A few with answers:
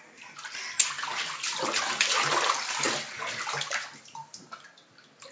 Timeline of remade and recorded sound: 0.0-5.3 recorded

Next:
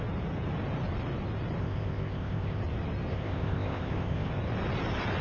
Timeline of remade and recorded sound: 0.0-1.6 recorded; 1.6-2.6 remade; 2.6-3.1 recorded; 3.1-4.3 remade; 4.3-5.2 recorded

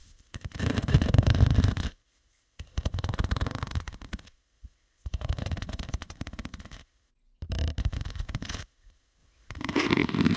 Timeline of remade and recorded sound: 0.0-7.1 remade; 7.1-7.8 recorded; 7.8-10.4 remade

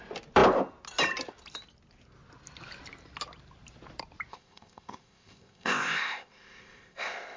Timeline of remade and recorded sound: 0.0-4.3 recorded; 4.3-7.4 remade

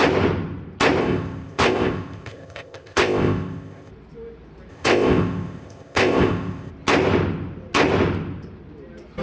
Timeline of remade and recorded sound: 0.0-1.0 recorded; 1.0-3.9 remade; 3.9-4.7 recorded; 4.7-6.7 remade; 6.7-9.2 recorded

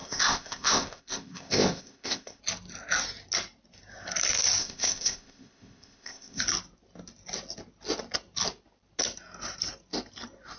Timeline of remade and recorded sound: 0.0-2.4 remade; 2.4-4.6 recorded; 4.6-6.4 remade; 6.4-10.6 recorded